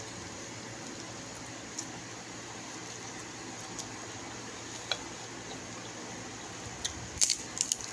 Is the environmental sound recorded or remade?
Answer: recorded